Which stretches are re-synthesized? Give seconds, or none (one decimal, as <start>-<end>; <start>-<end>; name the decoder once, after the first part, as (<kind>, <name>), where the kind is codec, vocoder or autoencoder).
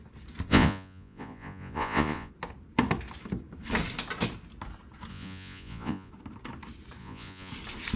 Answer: 0.5-2.3 (vocoder, Vocos); 5.1-6.1; 7.0-7.5